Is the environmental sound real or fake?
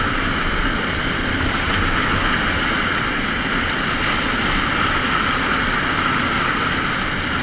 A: real